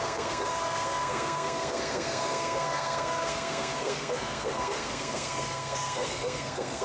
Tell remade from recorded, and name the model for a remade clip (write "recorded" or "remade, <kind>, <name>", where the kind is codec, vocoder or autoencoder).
remade, codec, SNAC